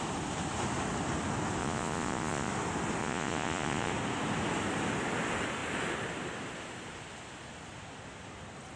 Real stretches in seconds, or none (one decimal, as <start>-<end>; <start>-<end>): 0.0-1.6; 2.5-3.0; 3.9-8.8